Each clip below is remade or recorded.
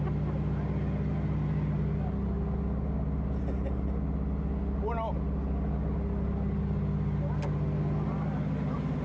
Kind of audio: recorded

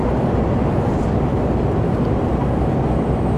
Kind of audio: recorded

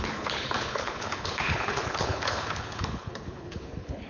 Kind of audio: remade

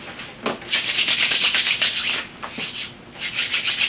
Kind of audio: recorded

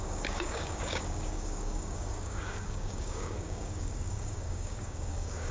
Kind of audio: remade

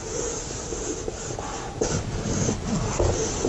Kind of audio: recorded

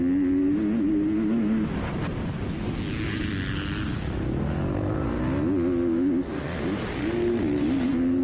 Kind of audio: recorded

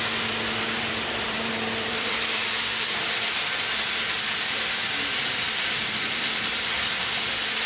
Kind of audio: remade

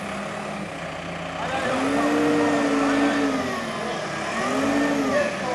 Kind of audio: recorded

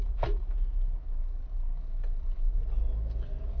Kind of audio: recorded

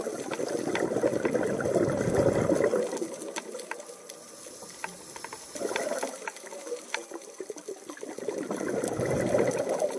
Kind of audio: recorded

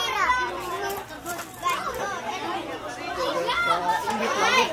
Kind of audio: remade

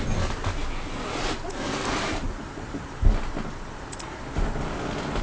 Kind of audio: recorded